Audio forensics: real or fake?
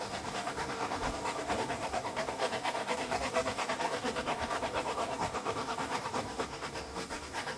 fake